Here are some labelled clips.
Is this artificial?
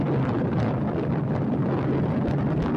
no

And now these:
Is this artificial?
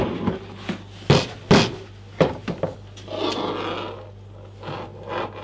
no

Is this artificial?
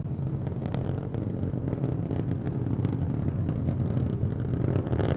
no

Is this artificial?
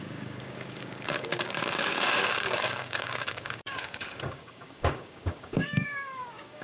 yes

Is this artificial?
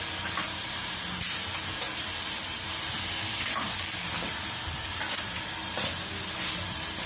no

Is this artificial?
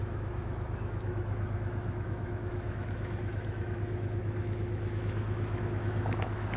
yes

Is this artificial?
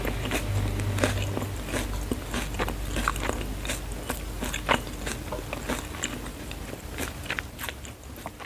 no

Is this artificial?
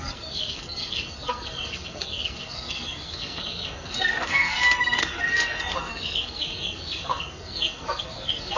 yes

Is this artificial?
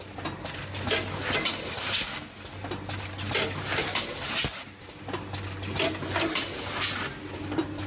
no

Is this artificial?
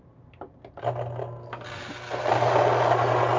no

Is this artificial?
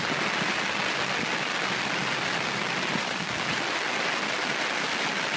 no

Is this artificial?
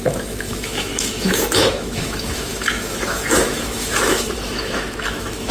yes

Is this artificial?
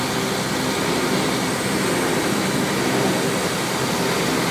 no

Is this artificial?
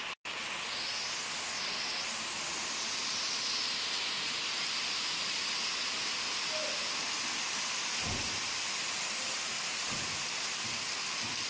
no